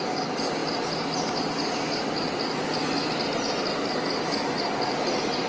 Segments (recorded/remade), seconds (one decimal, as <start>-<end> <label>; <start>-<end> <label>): 0.0-5.5 recorded